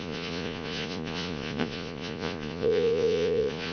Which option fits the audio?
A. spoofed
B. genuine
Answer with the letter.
A